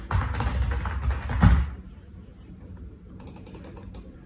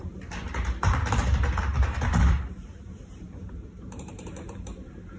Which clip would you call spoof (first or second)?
second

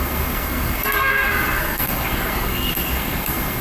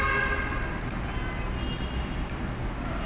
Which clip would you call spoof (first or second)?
first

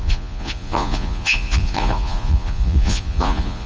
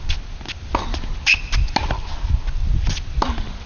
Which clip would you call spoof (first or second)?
first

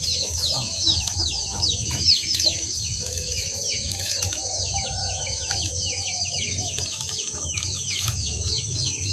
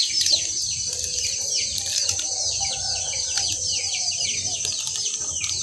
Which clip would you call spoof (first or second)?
first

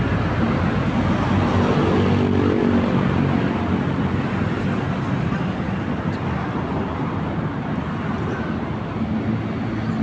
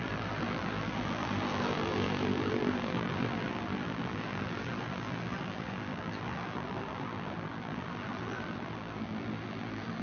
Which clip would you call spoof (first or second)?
second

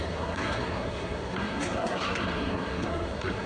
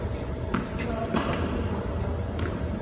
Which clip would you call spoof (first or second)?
first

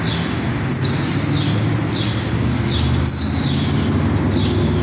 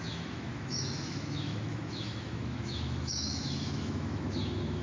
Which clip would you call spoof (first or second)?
second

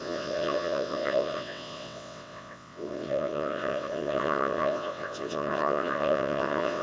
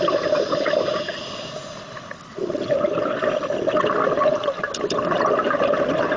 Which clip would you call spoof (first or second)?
first